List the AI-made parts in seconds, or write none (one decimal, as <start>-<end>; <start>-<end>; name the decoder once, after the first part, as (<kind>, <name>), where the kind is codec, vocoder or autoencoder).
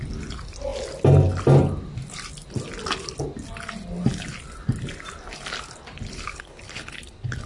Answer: 6.3-7.5 (codec, HILCodec)